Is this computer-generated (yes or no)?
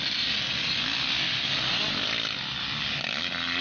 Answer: no